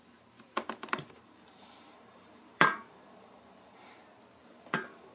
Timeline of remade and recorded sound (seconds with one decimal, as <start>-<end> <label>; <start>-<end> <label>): 0.0-0.9 recorded; 0.9-4.0 remade; 4.0-4.4 recorded; 4.4-5.1 remade